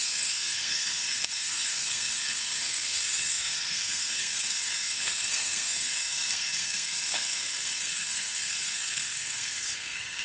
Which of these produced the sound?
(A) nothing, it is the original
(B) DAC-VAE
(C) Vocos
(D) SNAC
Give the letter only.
D